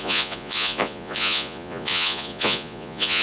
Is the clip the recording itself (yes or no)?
no